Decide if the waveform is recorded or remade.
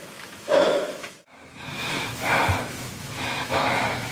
remade